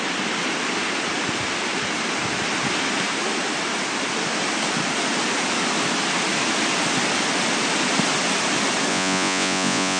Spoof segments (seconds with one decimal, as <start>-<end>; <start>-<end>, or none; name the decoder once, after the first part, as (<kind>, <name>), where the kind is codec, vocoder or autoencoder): 8.9-10.0 (vocoder, Vocos)